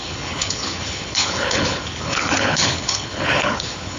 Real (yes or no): no